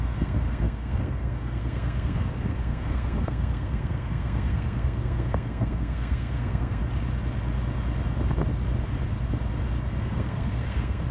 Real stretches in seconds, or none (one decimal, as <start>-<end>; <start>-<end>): 6.8-10.0